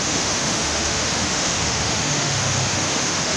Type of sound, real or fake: fake